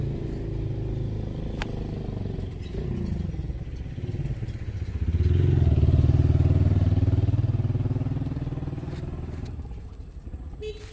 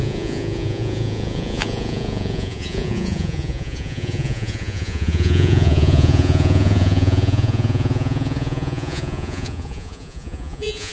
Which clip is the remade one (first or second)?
second